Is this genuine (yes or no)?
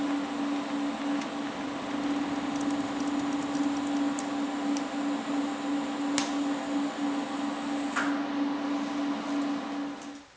yes